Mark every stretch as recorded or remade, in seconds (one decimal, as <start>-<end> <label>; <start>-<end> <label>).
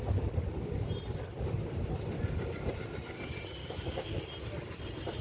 0.0-3.6 recorded; 3.6-4.2 remade; 4.2-5.2 recorded